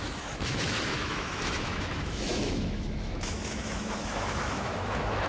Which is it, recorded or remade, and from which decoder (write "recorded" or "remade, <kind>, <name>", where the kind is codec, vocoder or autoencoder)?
remade, autoencoder, DAC-VAE